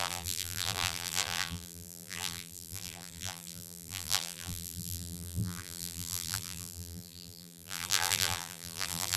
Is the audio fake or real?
fake